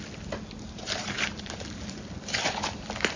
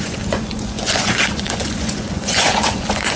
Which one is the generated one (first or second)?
second